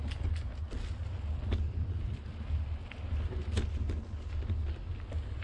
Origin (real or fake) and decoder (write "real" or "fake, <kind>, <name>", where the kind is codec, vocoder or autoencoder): real